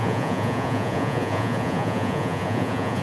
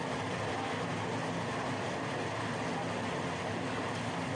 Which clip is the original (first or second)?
second